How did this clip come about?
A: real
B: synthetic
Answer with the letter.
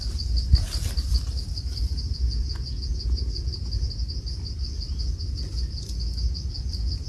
A